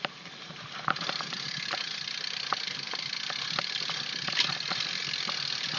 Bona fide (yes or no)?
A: yes